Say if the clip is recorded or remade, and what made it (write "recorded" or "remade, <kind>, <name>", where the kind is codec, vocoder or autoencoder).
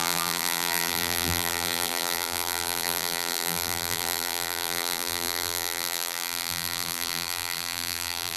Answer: remade, vocoder, BigVGAN v2